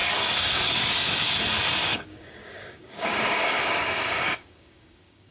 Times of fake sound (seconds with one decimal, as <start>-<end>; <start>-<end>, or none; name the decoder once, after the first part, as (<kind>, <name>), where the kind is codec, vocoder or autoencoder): 0.0-1.4 (codec, DAC); 1.8-5.3